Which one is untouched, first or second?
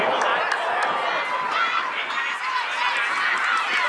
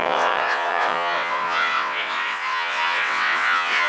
first